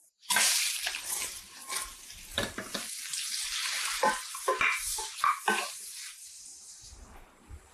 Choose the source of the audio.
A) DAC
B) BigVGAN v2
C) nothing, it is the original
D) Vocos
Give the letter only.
B